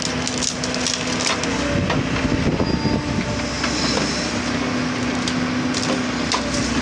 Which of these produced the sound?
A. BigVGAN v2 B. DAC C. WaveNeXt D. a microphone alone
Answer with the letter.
D